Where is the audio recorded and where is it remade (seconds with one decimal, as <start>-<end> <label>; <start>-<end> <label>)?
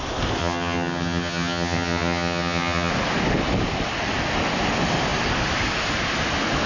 0.0-0.4 recorded; 0.4-2.9 remade; 2.9-6.7 recorded